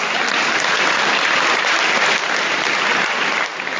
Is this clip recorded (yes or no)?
yes